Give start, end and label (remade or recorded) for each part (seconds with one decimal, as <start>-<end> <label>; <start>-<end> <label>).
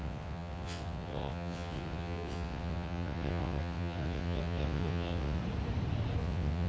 0.0-5.4 remade; 5.4-6.2 recorded; 6.2-6.7 remade